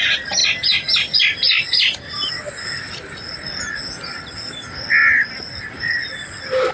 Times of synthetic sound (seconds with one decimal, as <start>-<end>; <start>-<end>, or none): none